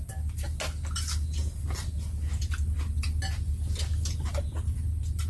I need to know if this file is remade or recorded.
recorded